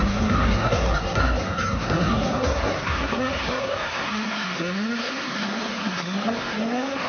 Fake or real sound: fake